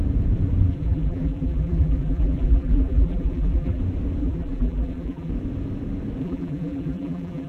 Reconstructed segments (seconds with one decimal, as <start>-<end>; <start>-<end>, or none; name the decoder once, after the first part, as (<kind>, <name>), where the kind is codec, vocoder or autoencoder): 0.7-3.8 (vocoder, BigVGAN v2); 4.2-5.3; 6.2-7.5